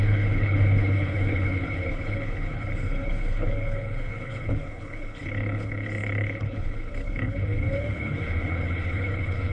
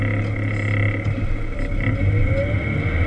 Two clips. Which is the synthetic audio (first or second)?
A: first